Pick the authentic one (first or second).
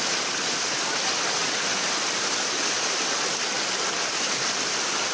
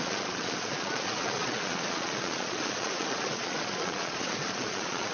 first